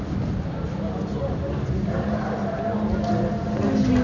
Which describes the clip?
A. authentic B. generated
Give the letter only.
A